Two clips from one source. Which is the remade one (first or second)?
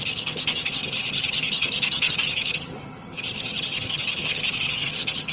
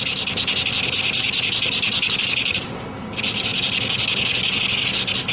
first